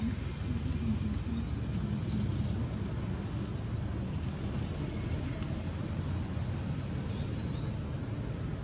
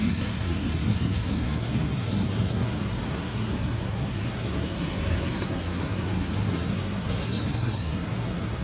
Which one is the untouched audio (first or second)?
first